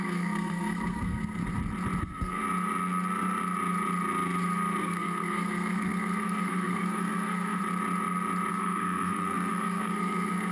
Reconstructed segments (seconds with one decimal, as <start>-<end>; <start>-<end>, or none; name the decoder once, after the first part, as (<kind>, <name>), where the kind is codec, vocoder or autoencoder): 0.0-1.4 (codec, SNAC); 2.0-2.4; 4.8-7.6; 8.5-10.5